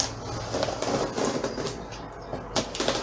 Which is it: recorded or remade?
recorded